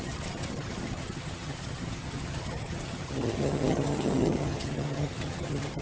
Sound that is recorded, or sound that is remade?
remade